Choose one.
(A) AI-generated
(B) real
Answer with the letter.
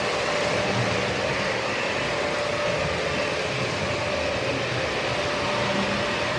B